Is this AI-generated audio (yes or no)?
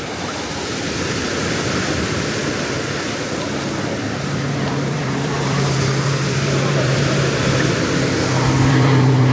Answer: yes